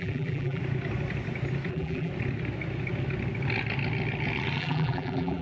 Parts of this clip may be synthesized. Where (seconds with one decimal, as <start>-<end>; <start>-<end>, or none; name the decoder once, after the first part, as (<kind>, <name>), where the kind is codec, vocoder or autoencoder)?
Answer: 0.0-0.6 (vocoder, BigVGAN v2); 1.7-2.1; 4.6-5.4